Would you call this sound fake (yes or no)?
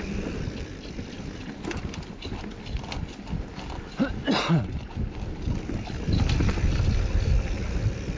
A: no